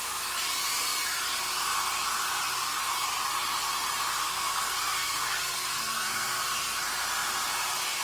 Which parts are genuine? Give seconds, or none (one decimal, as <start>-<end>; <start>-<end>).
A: 0.0-4.2; 6.3-8.0

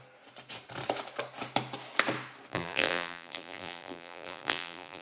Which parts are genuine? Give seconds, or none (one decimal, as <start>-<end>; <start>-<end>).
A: 0.0-2.5

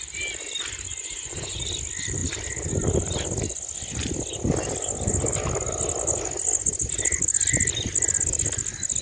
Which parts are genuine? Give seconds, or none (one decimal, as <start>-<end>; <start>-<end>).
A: 0.0-1.0; 1.6-9.0

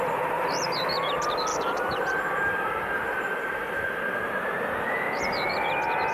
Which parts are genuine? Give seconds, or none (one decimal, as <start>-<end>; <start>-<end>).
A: 0.0-1.5; 5.2-6.1

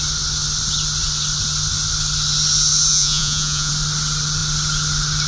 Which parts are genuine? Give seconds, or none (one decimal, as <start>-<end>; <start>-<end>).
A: 0.0-2.9; 3.7-5.3

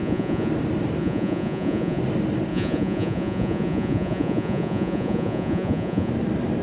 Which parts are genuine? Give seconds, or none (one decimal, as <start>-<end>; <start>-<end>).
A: 0.5-1.0; 2.0-2.5; 6.1-6.6

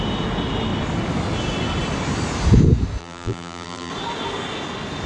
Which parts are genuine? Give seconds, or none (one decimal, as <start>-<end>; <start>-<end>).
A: 0.0-3.0; 3.9-5.1

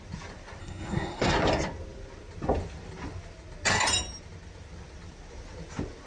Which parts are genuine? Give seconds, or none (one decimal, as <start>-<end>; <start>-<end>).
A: 0.0-0.6; 1.3-6.1